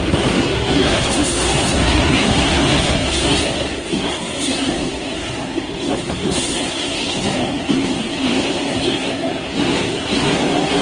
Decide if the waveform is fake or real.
fake